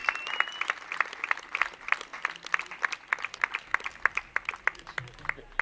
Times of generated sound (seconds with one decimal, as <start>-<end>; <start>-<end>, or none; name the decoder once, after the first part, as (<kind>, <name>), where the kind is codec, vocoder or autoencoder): none